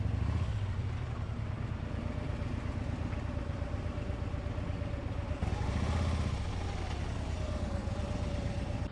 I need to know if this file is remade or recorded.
recorded